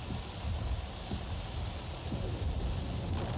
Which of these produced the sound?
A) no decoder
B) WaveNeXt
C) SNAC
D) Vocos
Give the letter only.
A